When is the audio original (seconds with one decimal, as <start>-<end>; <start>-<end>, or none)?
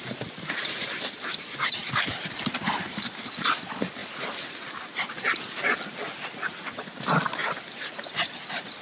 0.0-8.8